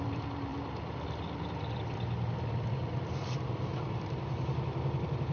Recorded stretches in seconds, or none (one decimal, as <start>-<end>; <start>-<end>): none